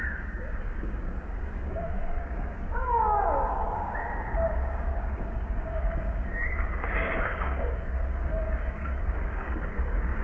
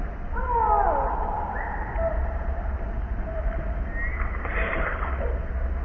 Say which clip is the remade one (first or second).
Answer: first